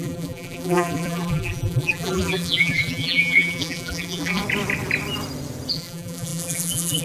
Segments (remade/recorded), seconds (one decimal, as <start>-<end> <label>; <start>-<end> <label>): 0.0-4.4 remade; 4.4-5.7 recorded; 5.7-7.0 remade